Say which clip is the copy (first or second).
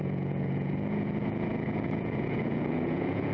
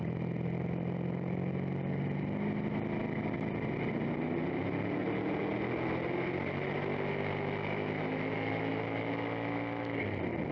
first